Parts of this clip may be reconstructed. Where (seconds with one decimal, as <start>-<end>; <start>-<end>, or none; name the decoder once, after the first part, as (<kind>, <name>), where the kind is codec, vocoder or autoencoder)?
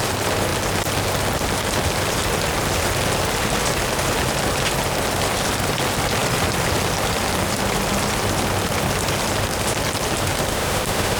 10.5-11.2 (autoencoder, DAC-VAE)